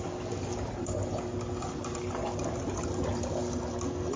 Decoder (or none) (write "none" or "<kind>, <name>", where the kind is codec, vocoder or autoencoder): none